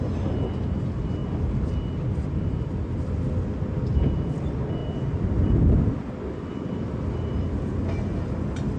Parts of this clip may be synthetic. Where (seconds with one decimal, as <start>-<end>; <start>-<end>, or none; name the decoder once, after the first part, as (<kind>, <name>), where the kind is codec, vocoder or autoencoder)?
none